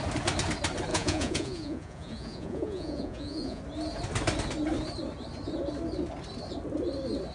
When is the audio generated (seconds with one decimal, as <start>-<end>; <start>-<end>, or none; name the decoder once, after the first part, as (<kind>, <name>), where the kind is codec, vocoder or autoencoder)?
0.9-3.6 (vocoder, Vocos)